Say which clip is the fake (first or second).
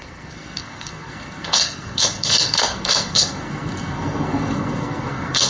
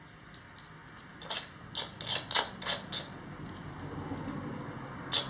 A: first